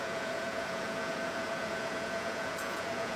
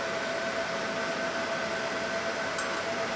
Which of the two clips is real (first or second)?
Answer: second